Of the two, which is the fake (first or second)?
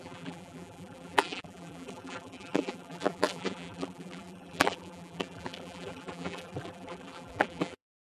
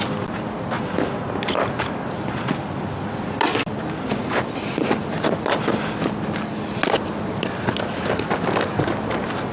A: first